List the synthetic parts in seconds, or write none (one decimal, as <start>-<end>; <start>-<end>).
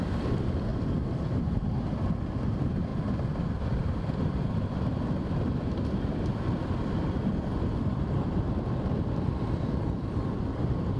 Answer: 0.0-0.7; 2.5-2.9; 7.2-11.0